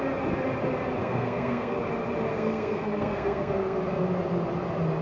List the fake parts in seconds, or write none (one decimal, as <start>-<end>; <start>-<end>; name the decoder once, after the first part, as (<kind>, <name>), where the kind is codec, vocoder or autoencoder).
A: 1.0-1.8 (codec, SNAC); 2.3-3.8